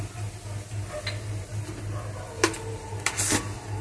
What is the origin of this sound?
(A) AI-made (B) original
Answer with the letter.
B